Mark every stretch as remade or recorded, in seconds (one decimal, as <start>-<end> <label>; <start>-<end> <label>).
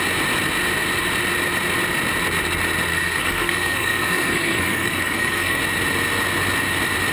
0.0-2.9 recorded; 2.9-5.6 remade; 5.6-7.1 recorded